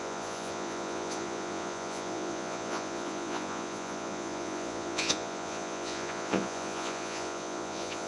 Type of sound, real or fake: fake